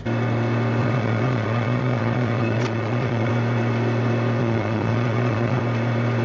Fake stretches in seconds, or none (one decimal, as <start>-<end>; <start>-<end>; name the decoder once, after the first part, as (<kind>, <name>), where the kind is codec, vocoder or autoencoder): 0.8-3.3 (vocoder, Vocos); 4.4-5.6